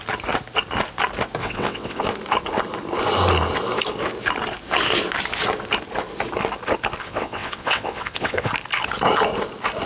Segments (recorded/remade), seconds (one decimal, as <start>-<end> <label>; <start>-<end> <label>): 0.0-1.4 recorded; 1.4-2.0 remade; 2.0-7.0 recorded; 7.0-8.5 remade; 8.5-9.9 recorded